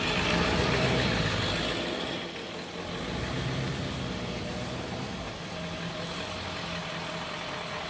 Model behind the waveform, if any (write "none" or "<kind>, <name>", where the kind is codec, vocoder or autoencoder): none